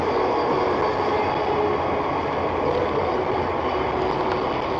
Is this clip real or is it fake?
real